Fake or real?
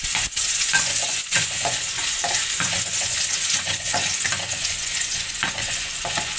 fake